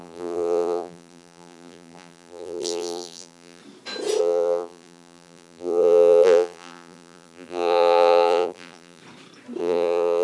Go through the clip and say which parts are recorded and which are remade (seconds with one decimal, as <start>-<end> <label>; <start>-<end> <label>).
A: 0.0-3.6 remade; 3.6-4.2 recorded; 4.2-9.0 remade; 9.0-9.6 recorded; 9.6-10.2 remade

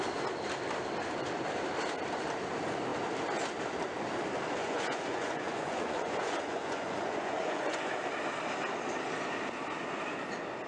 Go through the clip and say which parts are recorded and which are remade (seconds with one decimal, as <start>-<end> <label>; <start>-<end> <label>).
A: 0.0-4.6 recorded; 4.6-7.9 remade; 7.9-10.7 recorded

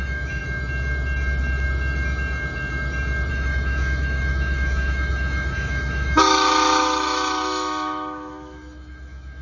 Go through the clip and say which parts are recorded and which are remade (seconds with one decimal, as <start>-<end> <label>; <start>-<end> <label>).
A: 0.0-0.4 remade; 0.4-3.3 recorded; 3.3-9.4 remade

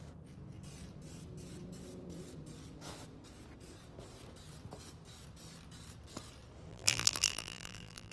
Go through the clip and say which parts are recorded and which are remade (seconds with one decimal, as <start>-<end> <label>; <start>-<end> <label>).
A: 0.0-6.7 recorded; 6.7-8.1 remade

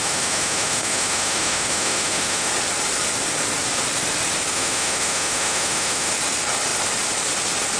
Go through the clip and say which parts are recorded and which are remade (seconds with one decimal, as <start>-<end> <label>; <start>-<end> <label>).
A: 0.0-2.5 remade; 2.5-4.5 recorded; 4.5-6.1 remade; 6.1-7.8 recorded

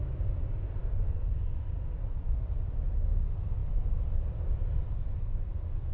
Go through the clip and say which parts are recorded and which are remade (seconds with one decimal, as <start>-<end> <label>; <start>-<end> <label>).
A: 0.0-5.9 recorded

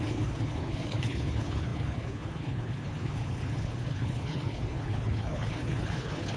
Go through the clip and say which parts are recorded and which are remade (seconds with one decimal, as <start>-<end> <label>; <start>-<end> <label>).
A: 0.0-6.4 remade